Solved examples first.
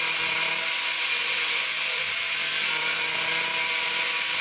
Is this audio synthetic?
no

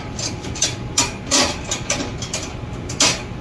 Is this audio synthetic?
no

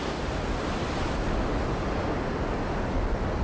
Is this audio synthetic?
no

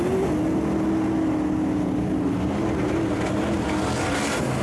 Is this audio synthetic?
no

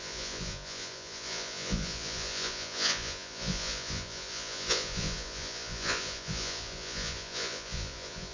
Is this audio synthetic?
yes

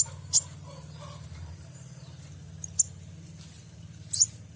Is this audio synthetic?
no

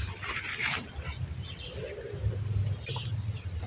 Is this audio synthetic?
no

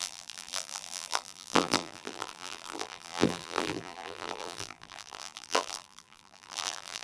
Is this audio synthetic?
yes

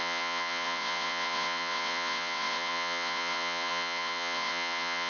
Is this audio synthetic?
yes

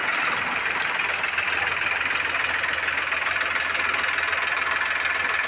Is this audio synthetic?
no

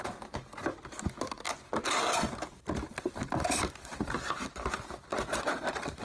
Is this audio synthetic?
no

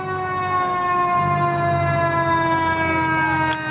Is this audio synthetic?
no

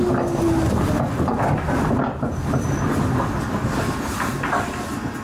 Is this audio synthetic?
no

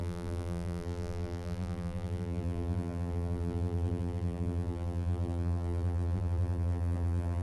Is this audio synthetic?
yes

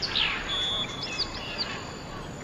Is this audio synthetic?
no